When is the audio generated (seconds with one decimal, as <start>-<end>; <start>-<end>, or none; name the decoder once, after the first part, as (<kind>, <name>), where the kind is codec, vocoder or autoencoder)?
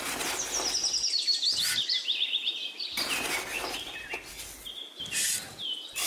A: none